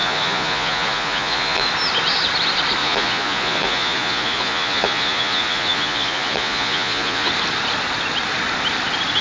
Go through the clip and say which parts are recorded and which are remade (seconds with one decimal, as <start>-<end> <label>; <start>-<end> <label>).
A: 0.0-1.7 remade; 1.7-2.8 recorded; 2.8-7.3 remade; 7.3-9.2 recorded